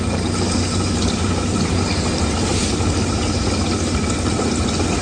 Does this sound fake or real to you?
real